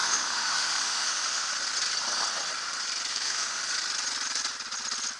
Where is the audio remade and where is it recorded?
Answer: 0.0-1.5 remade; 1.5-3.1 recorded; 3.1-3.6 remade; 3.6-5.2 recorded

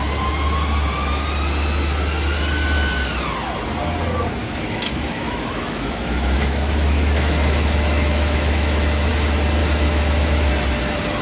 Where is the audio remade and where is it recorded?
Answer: 0.0-4.4 recorded; 4.4-9.1 remade; 9.1-9.6 recorded; 9.6-10.5 remade; 10.5-11.2 recorded

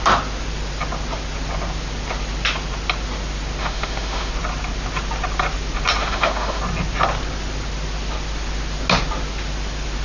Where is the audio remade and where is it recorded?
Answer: 0.0-3.6 recorded; 3.6-4.3 remade; 4.3-6.0 recorded; 6.0-6.6 remade; 6.6-10.0 recorded

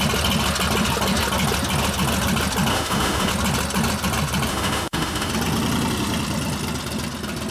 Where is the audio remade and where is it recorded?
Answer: 0.0-2.7 recorded; 2.7-3.3 remade; 3.3-4.5 recorded; 4.5-5.3 remade; 5.3-7.5 recorded

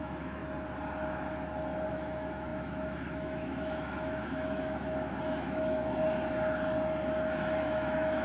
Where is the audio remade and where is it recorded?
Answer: 0.0-0.4 remade; 0.4-1.9 recorded; 1.9-5.8 remade; 5.8-7.6 recorded; 7.6-8.2 remade